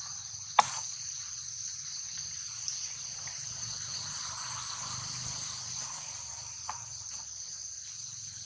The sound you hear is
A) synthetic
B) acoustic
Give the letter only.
A